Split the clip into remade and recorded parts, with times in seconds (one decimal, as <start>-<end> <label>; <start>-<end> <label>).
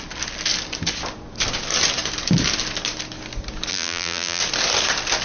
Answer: 0.0-3.7 recorded; 3.7-4.4 remade; 4.4-5.2 recorded